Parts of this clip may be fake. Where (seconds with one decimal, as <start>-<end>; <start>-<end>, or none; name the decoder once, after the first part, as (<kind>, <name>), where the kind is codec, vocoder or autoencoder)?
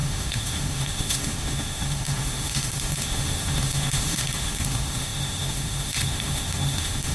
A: 0.0-7.1 (autoencoder, DAC-VAE)